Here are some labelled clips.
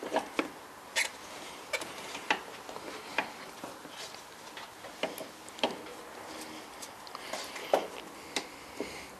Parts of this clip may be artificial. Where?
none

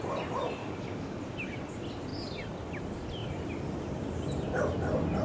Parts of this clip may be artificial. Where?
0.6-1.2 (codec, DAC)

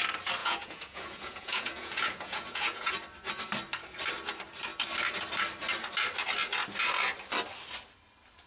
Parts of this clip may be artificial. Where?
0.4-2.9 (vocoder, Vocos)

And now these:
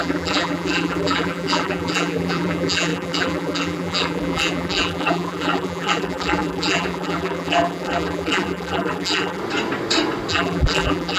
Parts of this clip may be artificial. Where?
0.0-9.4 (vocoder, BigVGAN v2); 10.3-11.2

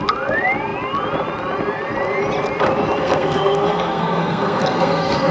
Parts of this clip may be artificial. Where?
3.0-5.3 (codec, SNAC)

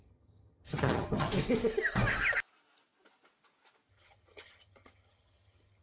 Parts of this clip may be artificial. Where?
0.0-1.3 (vocoder, HiFi-GAN); 3.9-5.8

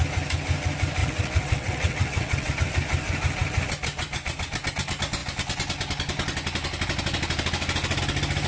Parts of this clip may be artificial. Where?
1.0-2.5 (vocoder, WaveNeXt)